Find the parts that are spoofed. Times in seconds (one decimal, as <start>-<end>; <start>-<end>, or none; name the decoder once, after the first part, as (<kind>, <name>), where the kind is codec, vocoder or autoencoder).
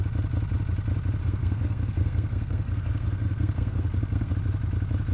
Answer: 1.2-4.3 (codec, SNAC)